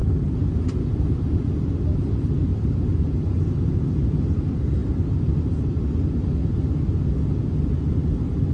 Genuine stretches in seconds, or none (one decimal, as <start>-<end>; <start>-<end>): 0.9-2.5; 3.8-8.5